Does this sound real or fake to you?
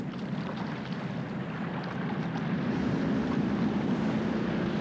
real